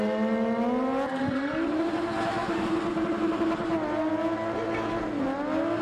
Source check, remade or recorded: recorded